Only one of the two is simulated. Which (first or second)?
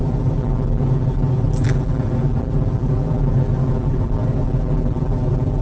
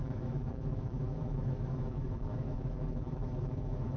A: second